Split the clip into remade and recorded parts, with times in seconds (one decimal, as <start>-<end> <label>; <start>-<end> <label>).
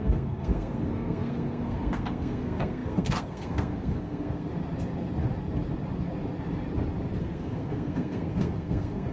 0.0-4.5 remade; 4.5-7.2 recorded; 7.2-9.1 remade